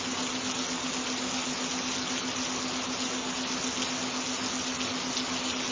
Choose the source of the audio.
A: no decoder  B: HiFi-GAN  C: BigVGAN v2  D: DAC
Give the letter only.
A